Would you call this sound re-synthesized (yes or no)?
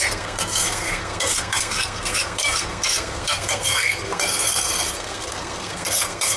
yes